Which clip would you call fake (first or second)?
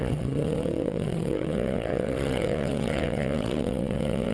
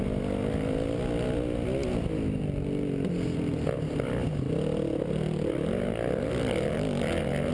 first